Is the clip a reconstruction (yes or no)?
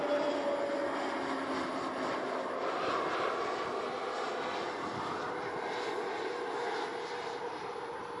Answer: no